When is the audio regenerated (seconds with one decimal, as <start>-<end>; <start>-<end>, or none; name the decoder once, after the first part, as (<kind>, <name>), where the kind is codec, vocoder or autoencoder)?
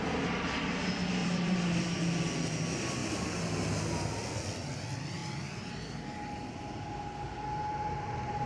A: 1.2-2.0 (vocoder, BigVGAN v2)